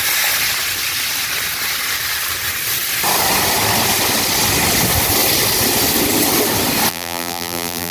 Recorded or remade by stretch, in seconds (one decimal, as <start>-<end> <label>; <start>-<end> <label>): 0.0-6.9 recorded; 6.9-7.9 remade